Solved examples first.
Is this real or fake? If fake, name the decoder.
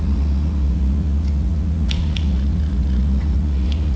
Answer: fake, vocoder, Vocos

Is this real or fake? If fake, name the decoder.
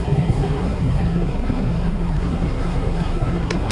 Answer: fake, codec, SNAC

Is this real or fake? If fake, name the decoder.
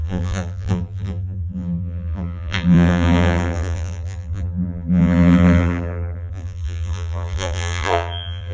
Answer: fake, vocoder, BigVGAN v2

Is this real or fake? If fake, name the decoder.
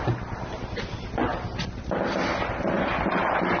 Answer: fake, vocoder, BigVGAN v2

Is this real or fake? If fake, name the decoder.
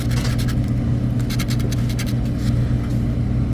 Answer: real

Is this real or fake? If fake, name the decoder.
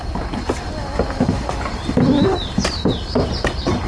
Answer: real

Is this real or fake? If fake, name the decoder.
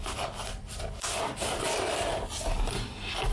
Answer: real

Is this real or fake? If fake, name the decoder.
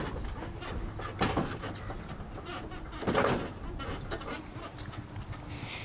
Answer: real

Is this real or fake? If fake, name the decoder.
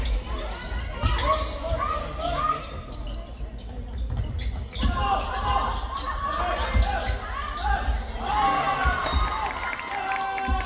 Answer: real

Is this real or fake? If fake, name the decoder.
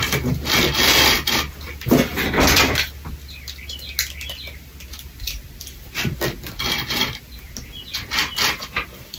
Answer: real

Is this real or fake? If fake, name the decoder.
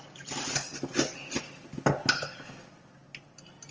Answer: real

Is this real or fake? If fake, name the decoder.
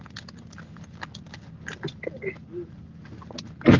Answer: real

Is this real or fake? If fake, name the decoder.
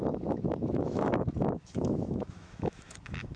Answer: fake, autoencoder, DAC-VAE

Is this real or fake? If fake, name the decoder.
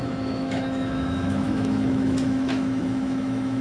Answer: fake, autoencoder, DAC-VAE